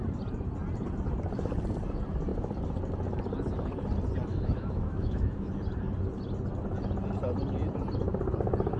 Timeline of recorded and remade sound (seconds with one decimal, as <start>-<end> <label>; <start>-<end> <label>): 0.0-4.3 recorded; 4.3-5.5 remade; 5.5-8.8 recorded